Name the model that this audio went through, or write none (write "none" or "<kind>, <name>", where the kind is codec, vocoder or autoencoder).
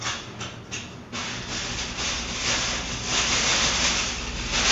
none